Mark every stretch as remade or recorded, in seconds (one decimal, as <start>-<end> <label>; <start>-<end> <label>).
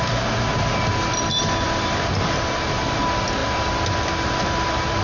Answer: 0.0-0.5 recorded; 0.5-2.5 remade; 2.5-3.4 recorded; 3.4-4.1 remade; 4.1-5.0 recorded